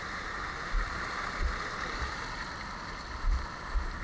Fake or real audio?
real